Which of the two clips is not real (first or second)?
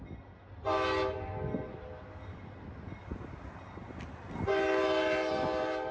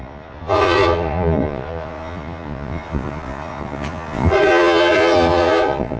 second